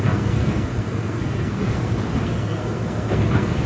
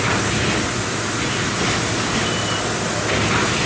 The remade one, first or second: first